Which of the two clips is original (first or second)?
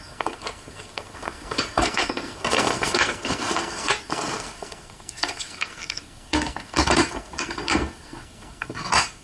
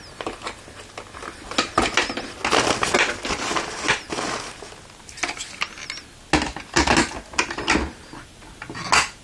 second